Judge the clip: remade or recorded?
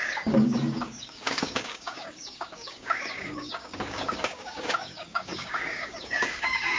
remade